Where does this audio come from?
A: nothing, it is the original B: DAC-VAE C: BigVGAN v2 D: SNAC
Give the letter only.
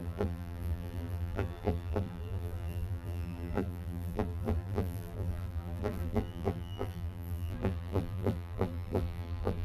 C